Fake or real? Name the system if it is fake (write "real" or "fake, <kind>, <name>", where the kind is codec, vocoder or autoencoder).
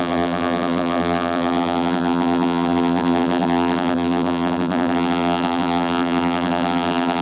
fake, vocoder, BigVGAN v2